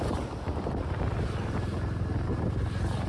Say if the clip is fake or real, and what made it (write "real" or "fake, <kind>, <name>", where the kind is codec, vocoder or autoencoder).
real